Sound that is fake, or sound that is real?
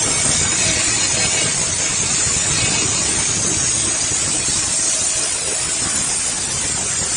real